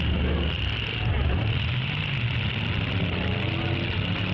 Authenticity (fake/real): fake